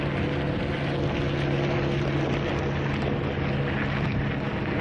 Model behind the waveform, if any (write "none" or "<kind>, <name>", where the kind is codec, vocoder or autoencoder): none